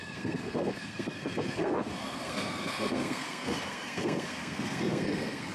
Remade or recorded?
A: remade